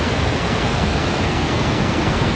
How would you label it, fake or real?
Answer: fake